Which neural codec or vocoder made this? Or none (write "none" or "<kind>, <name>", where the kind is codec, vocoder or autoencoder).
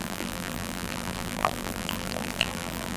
vocoder, BigVGAN v2